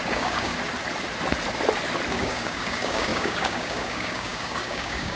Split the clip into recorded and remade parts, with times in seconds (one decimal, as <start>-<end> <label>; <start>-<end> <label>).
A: 0.0-0.5 remade; 0.5-2.1 recorded; 2.1-5.2 remade